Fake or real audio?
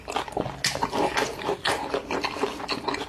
real